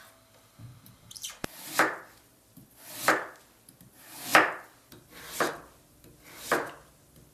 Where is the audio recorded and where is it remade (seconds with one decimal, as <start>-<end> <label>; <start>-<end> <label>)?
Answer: 0.0-0.7 recorded; 0.7-2.7 remade; 2.7-4.3 recorded; 4.3-5.5 remade; 5.5-7.3 recorded